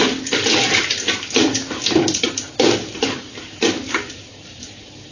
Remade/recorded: remade